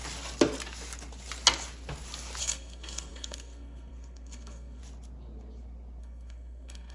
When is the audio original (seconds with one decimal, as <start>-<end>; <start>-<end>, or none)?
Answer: 0.0-2.4; 4.8-6.0